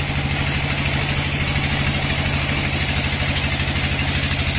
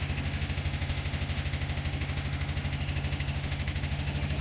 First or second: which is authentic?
first